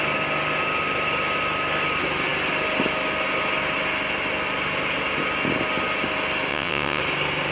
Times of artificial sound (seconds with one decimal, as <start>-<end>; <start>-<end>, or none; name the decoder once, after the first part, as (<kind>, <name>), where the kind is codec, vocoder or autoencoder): 6.5-7.0 (vocoder, WaveNeXt)